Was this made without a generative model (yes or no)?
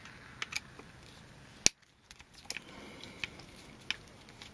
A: yes